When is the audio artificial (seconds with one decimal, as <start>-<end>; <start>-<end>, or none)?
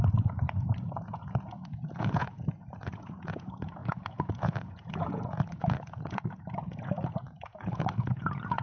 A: 0.0-8.6